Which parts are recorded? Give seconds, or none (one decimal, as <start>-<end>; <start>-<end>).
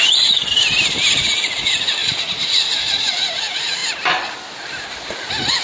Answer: 0.4-1.1; 3.8-5.1